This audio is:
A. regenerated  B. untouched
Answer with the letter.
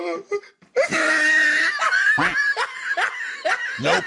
B